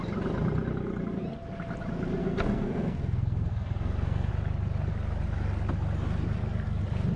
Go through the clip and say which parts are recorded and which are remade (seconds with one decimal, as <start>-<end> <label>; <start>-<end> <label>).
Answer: 0.0-2.2 recorded; 2.2-4.3 remade; 4.3-7.2 recorded